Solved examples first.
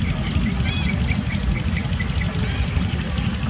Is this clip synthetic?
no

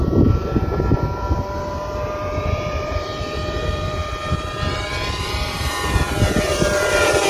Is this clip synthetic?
yes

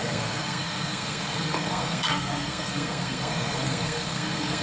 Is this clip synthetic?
yes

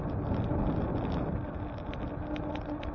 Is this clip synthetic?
no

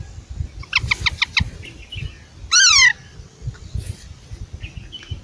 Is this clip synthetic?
no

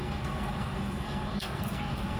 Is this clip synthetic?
yes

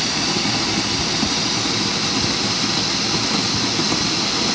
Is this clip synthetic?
no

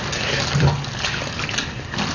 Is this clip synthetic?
no